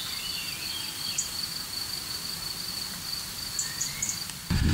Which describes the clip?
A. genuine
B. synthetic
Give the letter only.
A